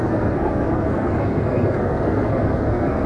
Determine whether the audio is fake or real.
fake